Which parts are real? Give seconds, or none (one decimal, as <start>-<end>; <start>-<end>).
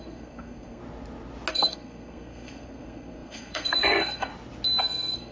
0.8-1.5; 4.3-4.8